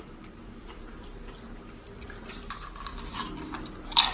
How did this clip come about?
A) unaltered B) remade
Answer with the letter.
A